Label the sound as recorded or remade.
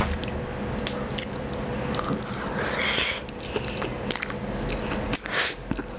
recorded